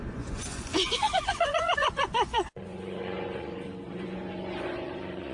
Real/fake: fake